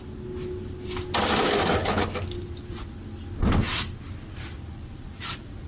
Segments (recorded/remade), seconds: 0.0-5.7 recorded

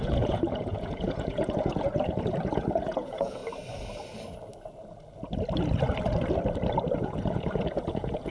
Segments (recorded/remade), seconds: 0.0-3.4 remade; 3.4-7.0 recorded; 7.0-8.3 remade